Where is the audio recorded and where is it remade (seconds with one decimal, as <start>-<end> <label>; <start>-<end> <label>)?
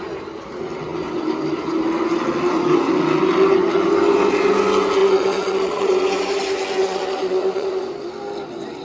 0.0-5.0 recorded; 5.0-5.9 remade; 5.9-6.8 recorded; 6.8-7.8 remade; 7.8-8.8 recorded